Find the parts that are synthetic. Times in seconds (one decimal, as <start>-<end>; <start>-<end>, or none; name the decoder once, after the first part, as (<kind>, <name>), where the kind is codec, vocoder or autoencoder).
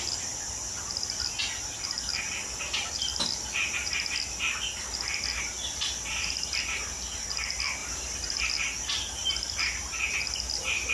7.8-8.4 (vocoder, BigVGAN v2); 9.2-9.9